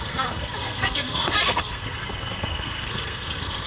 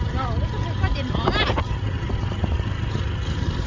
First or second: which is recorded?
second